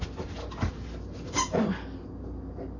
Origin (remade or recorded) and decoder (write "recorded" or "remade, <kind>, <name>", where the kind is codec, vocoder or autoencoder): recorded